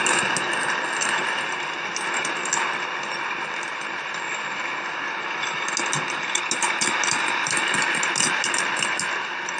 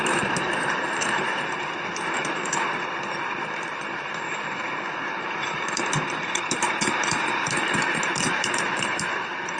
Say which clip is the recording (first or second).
first